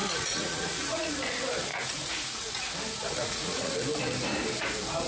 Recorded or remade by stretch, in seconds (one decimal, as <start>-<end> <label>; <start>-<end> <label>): 0.0-1.1 remade; 1.1-1.7 recorded; 1.7-2.6 remade; 2.6-3.0 recorded; 3.0-3.7 remade; 3.7-5.1 recorded